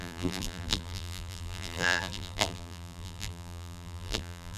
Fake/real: fake